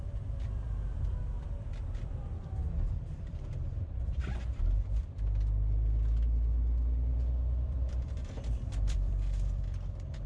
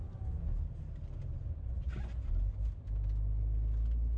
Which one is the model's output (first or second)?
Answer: first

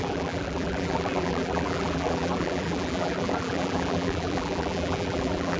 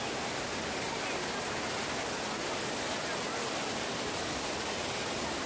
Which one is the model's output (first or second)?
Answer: first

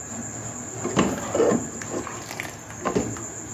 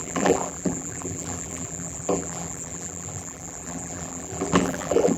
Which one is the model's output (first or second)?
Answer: second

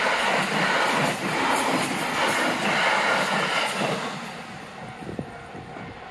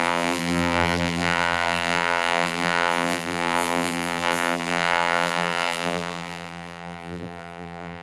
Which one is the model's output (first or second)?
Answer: second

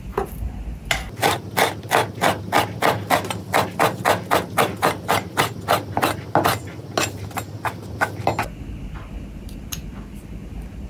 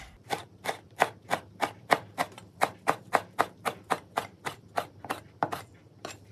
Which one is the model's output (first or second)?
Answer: second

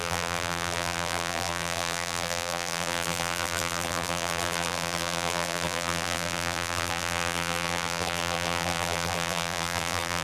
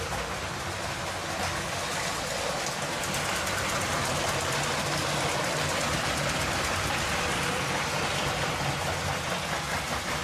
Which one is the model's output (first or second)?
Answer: first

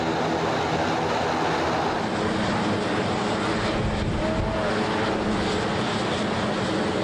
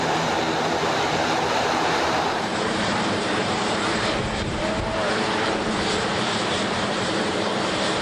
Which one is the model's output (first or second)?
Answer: second